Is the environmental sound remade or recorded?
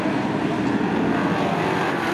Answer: recorded